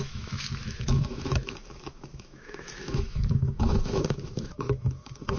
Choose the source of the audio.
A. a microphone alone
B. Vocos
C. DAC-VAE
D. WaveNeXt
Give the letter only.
C